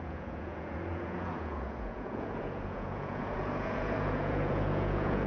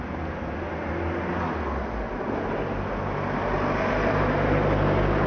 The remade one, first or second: first